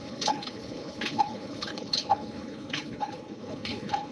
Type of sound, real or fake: fake